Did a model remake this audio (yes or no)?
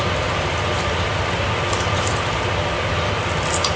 no